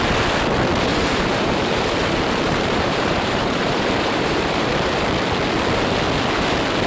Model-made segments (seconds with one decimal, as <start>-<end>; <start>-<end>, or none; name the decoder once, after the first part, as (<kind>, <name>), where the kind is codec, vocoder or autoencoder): 0.9-5.0 (vocoder, BigVGAN v2)